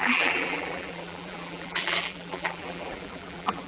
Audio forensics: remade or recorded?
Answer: remade